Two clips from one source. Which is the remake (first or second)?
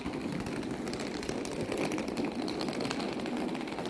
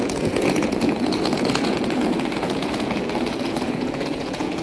second